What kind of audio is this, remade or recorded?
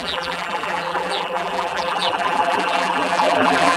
remade